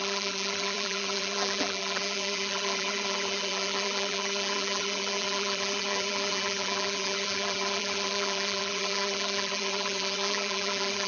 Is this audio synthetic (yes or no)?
yes